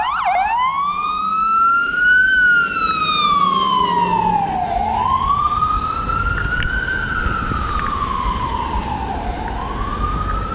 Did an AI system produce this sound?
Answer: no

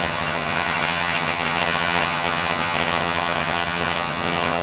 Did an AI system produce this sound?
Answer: yes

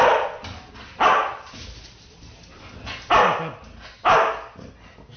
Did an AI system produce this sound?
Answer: no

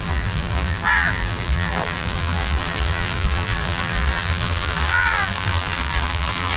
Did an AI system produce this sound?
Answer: yes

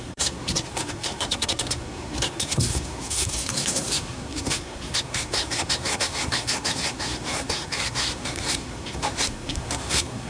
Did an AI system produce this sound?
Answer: yes